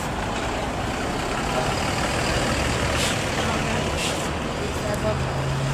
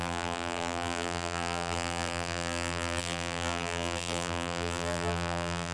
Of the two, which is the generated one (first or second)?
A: second